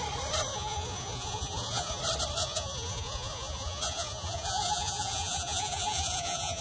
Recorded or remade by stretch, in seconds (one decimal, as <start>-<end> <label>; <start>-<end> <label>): 0.0-0.5 recorded; 0.5-2.0 remade; 2.0-2.4 recorded; 2.4-6.6 remade

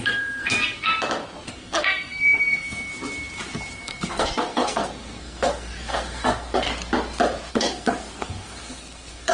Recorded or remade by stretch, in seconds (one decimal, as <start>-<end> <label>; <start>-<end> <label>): 0.0-0.9 remade; 0.9-1.5 recorded; 1.5-2.9 remade; 2.9-3.7 recorded; 3.7-6.7 remade; 6.7-7.5 recorded; 7.5-9.3 remade

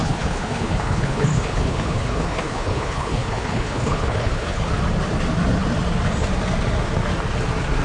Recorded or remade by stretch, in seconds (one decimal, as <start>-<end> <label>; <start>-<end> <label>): 0.0-4.7 remade; 4.7-7.8 recorded

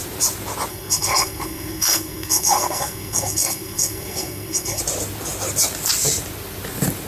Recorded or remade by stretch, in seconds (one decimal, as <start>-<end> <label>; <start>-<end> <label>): 0.0-0.7 recorded; 0.7-4.8 remade; 4.8-7.1 recorded

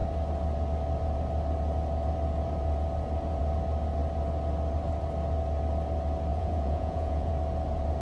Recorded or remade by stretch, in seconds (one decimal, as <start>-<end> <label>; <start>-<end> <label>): 0.0-6.3 recorded; 6.3-7.3 remade; 7.3-8.0 recorded

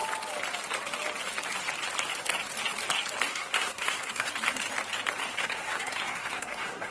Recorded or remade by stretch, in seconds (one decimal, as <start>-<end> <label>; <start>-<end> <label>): 0.0-3.3 recorded; 3.3-4.3 remade; 4.3-5.3 recorded; 5.3-6.9 remade